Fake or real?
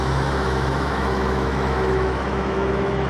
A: fake